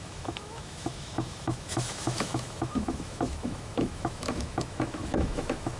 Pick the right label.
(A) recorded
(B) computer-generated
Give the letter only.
B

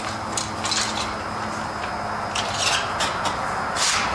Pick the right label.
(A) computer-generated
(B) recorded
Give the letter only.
B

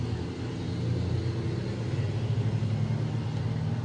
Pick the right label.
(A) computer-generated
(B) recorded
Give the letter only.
B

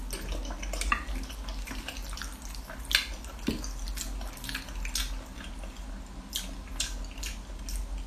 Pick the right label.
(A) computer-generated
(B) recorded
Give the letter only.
B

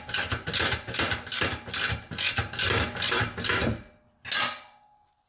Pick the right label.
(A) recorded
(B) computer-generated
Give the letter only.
A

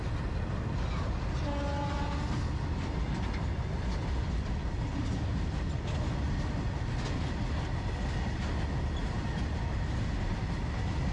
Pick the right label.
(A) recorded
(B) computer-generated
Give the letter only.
A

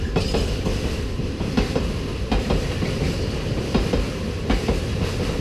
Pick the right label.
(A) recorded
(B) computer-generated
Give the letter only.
A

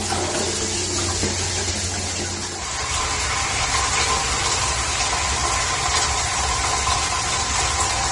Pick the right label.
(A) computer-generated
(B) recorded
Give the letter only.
B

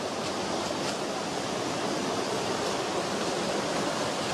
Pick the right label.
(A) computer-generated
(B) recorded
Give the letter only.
B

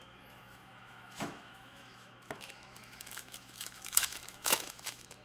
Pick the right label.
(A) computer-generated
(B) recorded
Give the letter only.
A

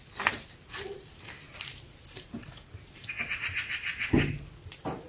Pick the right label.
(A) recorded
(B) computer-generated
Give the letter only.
A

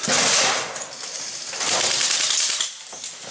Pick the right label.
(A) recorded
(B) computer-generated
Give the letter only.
A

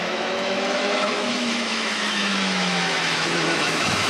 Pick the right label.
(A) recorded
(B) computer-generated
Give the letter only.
B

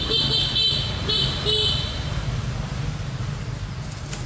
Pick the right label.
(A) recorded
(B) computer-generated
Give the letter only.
A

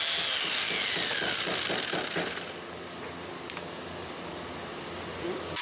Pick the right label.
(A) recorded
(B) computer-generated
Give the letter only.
A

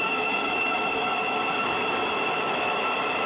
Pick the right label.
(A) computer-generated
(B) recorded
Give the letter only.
A